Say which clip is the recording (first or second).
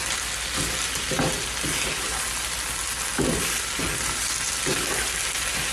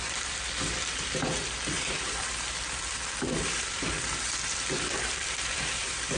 first